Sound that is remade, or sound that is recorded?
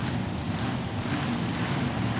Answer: recorded